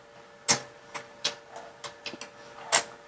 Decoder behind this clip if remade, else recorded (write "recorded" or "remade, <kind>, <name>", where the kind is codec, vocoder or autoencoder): recorded